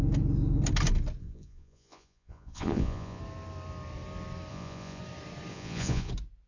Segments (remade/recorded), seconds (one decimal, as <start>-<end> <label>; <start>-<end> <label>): 0.0-1.2 recorded; 1.2-3.2 remade; 3.2-4.5 recorded; 4.5-5.0 remade; 5.0-5.5 recorded; 5.5-6.1 remade; 6.1-6.5 recorded